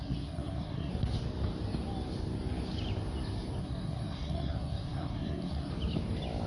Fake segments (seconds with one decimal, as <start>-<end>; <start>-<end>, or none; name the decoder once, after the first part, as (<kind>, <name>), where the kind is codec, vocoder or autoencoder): 0.0-0.9 (codec, SNAC); 3.6-5.7